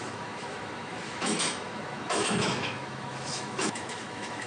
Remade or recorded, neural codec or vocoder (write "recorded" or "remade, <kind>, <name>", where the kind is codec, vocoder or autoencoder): remade, autoencoder, DAC-VAE